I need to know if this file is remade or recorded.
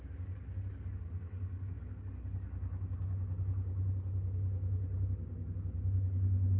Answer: recorded